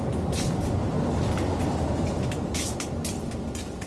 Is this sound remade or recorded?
recorded